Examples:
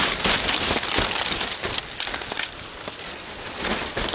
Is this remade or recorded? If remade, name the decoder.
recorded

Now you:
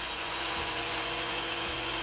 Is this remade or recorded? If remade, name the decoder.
remade, vocoder, Vocos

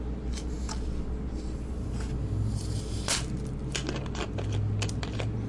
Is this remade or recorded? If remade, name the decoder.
recorded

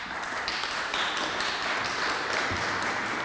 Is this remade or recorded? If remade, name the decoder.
recorded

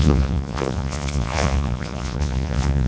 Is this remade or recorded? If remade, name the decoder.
remade, vocoder, Vocos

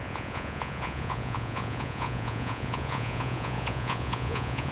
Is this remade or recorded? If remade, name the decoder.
remade, vocoder, Vocos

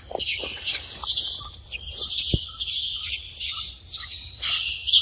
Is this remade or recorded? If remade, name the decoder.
recorded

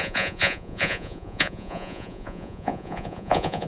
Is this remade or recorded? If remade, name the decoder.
remade, vocoder, Vocos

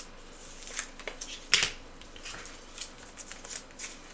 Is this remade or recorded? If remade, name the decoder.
recorded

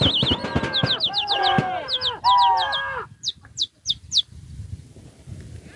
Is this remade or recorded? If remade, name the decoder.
recorded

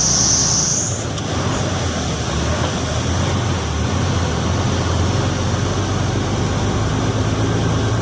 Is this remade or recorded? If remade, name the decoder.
recorded